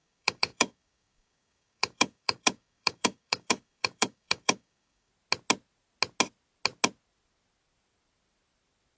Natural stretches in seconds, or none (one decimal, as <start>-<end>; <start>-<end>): 5.1-9.0

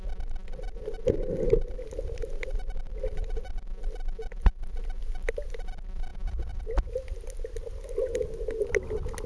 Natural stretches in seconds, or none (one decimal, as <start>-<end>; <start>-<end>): 0.0-6.1; 6.7-9.3